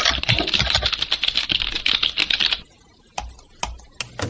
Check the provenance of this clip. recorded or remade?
recorded